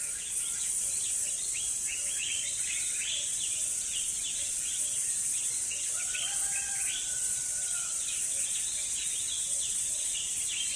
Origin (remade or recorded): remade